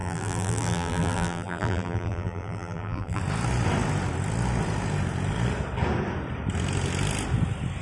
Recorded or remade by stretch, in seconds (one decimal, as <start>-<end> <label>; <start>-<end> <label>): 0.0-3.2 remade; 3.2-7.8 recorded